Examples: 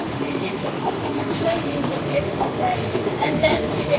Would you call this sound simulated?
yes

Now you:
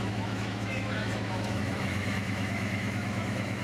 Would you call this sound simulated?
yes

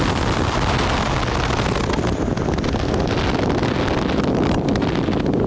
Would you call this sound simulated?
no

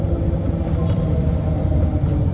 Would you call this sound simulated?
no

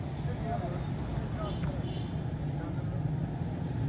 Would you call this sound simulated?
no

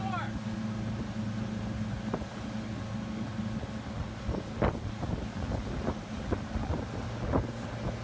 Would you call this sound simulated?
no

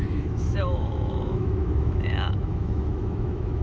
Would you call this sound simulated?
yes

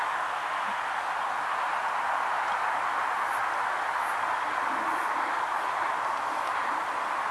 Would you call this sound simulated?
no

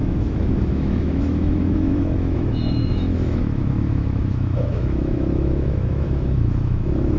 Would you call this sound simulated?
yes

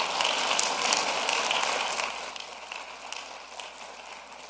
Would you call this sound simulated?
no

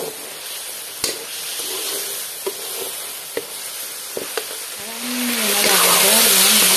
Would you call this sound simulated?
no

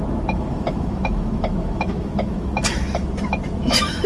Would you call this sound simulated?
yes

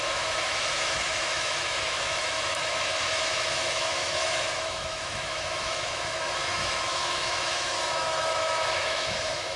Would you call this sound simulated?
yes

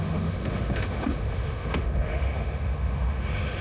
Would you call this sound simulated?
yes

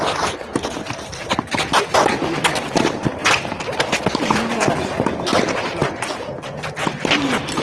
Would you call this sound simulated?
no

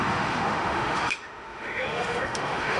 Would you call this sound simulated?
yes